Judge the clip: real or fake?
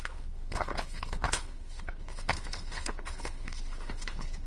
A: fake